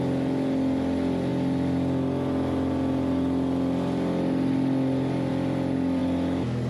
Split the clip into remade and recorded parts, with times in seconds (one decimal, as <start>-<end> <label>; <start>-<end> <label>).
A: 0.0-6.7 recorded